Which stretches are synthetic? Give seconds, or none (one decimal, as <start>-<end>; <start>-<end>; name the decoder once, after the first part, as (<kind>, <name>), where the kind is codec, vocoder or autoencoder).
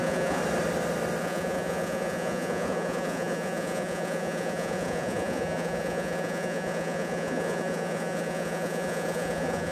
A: 0.0-0.4 (vocoder, Vocos); 1.2-9.7